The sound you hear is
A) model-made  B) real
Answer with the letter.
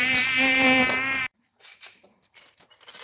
A